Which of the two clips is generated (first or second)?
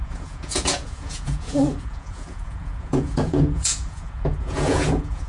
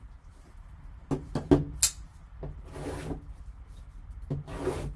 first